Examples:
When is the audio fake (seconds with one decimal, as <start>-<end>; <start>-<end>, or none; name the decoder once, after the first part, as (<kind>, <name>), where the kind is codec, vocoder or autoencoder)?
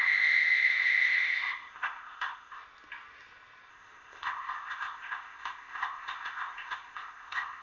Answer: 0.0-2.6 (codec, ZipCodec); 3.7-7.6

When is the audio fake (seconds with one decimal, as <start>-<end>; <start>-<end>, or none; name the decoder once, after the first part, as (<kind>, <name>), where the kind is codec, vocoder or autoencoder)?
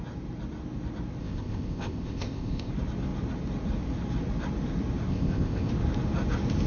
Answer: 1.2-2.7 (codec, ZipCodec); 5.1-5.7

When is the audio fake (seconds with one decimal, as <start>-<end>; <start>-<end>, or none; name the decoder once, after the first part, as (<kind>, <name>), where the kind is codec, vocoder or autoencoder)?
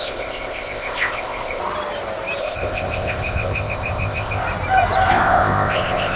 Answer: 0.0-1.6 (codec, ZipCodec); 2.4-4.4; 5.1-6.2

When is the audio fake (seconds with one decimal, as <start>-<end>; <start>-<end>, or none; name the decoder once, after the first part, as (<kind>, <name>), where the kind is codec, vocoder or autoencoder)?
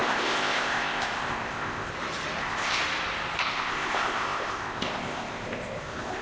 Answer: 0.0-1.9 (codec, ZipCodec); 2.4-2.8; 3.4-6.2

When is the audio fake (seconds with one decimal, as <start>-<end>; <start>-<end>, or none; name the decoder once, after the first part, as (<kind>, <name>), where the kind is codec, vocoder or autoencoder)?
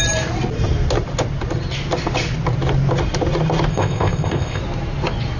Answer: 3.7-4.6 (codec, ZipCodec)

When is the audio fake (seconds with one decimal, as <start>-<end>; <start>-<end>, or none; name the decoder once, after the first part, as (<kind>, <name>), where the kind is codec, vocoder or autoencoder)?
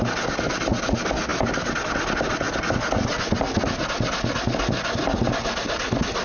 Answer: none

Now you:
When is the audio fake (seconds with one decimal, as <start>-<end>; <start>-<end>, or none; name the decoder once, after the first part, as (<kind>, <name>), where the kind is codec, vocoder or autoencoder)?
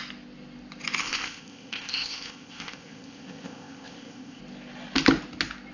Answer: 1.0-4.4 (codec, ZipCodec)